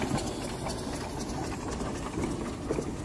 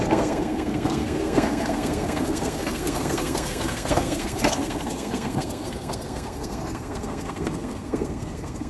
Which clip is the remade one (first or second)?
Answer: second